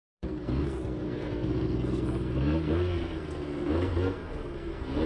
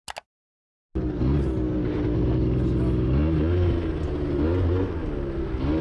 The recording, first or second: second